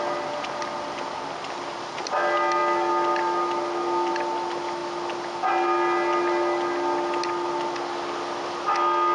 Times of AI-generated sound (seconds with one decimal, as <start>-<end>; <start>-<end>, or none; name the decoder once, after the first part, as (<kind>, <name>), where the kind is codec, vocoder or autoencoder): none